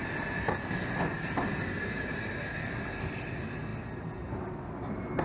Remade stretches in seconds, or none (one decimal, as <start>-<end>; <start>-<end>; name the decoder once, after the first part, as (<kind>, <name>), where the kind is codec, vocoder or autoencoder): none